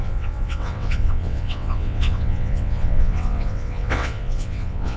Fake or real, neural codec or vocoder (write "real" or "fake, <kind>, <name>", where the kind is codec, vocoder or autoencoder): fake, vocoder, WaveNeXt